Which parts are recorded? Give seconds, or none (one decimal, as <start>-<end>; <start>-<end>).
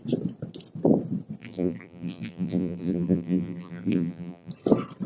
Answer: 0.0-1.4; 4.5-5.1